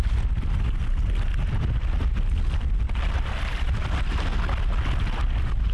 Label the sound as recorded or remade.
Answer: recorded